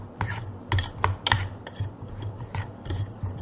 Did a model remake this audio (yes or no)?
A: no